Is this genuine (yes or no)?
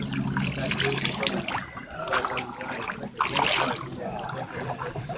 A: yes